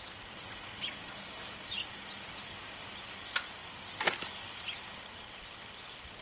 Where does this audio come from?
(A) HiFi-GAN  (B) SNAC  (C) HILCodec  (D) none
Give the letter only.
D